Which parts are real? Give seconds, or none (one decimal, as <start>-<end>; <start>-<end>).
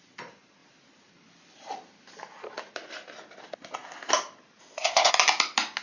0.0-4.6; 5.1-5.8